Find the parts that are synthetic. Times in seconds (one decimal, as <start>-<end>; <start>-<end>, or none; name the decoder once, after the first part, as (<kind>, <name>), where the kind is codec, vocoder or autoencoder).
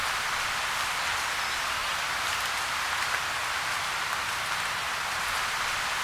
none